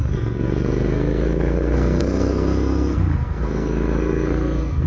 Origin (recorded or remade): remade